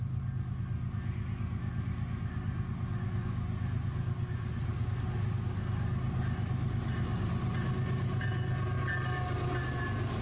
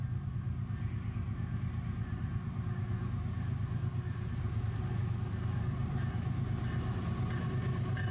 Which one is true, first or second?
first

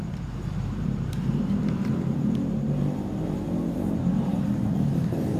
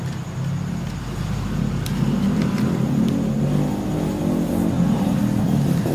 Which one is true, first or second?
second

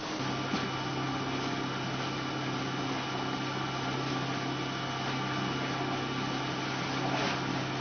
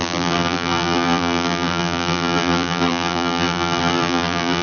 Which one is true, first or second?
first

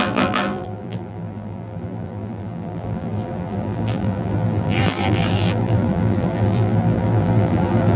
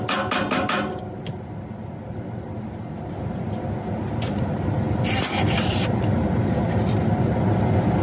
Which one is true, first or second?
second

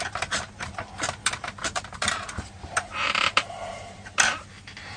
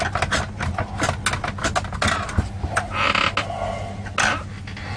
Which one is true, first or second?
second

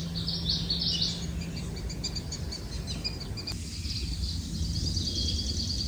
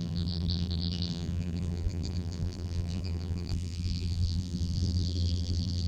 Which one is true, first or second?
first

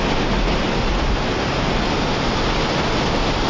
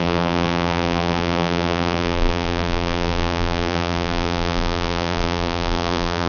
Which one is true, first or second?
first